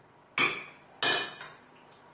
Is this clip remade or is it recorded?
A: recorded